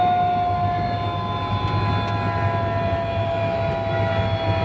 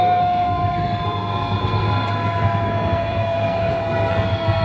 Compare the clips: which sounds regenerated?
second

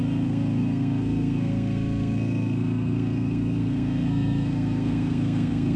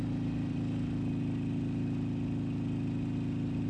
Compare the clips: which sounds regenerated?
first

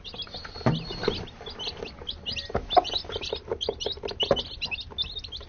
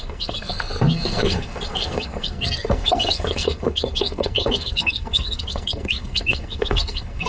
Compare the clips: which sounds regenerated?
second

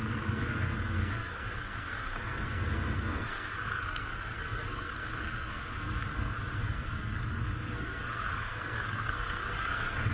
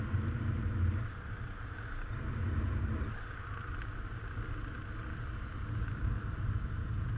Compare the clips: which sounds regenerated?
first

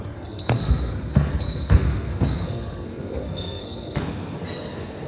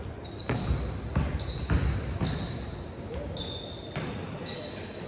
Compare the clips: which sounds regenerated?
first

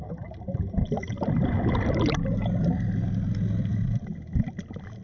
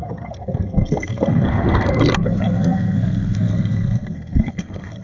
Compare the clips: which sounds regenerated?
second